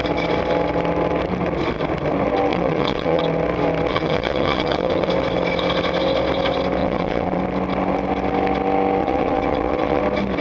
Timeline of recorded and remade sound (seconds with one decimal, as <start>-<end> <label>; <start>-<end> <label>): 0.0-2.5 recorded; 2.5-3.2 remade; 3.2-3.9 recorded; 3.9-5.1 remade; 5.1-6.8 recorded; 6.8-7.4 remade; 7.4-9.0 recorded; 9.0-10.0 remade; 10.0-10.4 recorded